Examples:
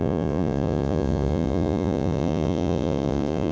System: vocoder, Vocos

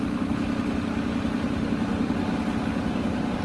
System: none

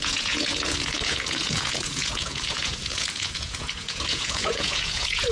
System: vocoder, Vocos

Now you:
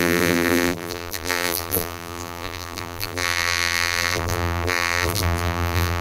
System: vocoder, BigVGAN v2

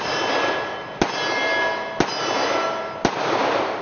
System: none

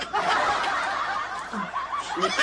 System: none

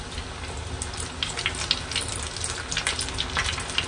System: none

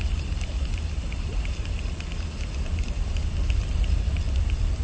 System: none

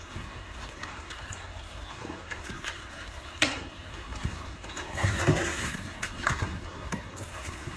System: codec, SNAC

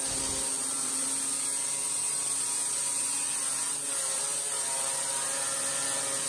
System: none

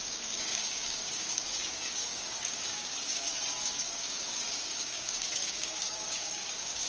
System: codec, DAC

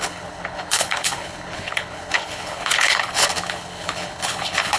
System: codec, HILCodec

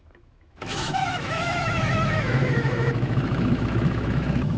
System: autoencoder, DAC-VAE